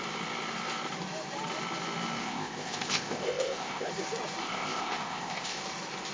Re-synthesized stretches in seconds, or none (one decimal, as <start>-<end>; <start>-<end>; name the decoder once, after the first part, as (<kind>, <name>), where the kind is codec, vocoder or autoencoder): 2.2-3.9 (codec, ZipCodec); 4.4-5.6